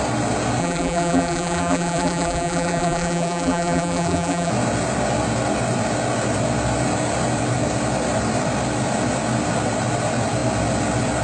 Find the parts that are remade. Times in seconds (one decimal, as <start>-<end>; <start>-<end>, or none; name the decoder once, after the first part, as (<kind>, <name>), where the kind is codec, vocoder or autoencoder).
0.6-4.5 (vocoder, BigVGAN v2)